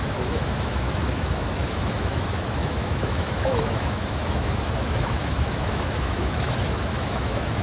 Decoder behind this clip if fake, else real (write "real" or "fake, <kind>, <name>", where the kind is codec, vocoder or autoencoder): fake, autoencoder, DAC-VAE